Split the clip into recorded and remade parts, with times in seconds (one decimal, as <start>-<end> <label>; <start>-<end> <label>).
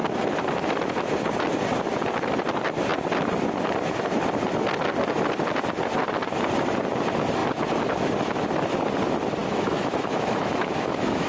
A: 0.0-9.4 recorded; 9.4-11.3 remade